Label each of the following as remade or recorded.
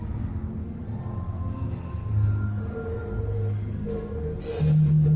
recorded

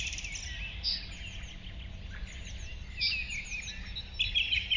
recorded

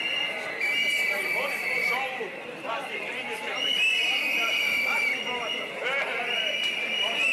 recorded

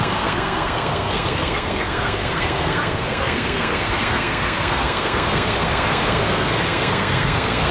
remade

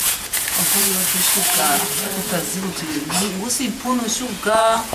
remade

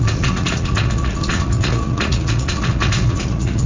remade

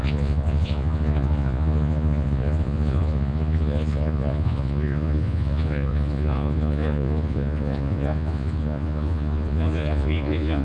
remade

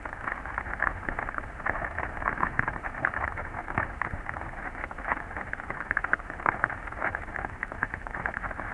remade